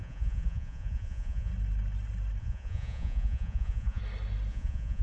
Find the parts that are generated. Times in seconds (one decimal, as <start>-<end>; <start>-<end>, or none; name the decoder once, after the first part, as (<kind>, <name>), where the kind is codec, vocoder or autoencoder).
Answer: 0.0-1.5 (vocoder, Vocos); 2.4-4.0; 4.5-5.0

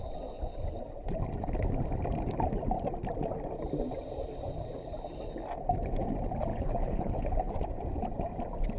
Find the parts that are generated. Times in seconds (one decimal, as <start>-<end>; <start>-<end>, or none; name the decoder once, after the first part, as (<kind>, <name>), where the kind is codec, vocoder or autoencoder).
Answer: 6.5-7.5 (codec, HILCodec)

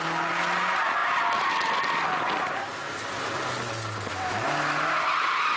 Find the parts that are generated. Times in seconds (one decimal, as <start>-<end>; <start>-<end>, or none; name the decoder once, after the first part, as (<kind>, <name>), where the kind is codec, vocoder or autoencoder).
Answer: none

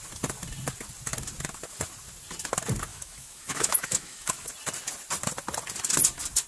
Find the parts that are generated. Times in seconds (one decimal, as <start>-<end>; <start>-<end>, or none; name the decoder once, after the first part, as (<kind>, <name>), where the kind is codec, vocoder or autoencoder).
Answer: 2.9-4.5 (autoencoder, DAC-VAE)

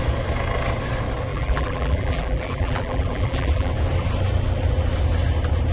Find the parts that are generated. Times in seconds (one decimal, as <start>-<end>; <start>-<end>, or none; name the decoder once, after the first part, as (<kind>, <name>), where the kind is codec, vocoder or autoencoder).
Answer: 1.3-3.7 (vocoder, BigVGAN v2)

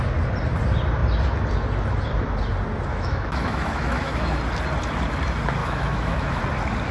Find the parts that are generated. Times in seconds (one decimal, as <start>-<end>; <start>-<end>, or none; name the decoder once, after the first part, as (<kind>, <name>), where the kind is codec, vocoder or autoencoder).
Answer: 2.9-4.4 (autoencoder, DAC-VAE); 5.6-6.4